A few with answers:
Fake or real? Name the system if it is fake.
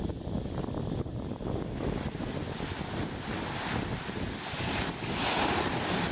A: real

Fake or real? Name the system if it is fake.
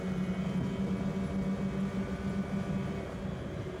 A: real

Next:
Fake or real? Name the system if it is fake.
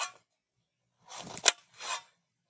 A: real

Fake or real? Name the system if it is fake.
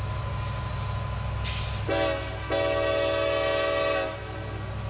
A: real